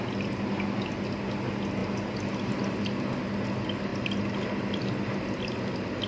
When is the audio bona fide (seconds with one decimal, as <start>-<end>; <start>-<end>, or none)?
0.0-1.8; 2.7-3.9; 5.4-6.1